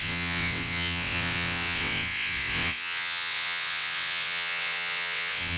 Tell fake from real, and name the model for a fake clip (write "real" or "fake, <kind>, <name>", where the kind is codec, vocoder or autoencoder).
fake, vocoder, WaveNeXt